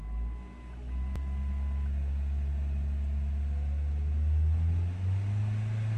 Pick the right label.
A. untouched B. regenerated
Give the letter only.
A